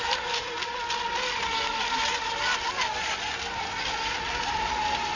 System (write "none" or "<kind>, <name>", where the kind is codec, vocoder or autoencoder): none